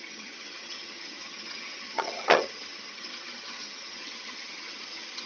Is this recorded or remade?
remade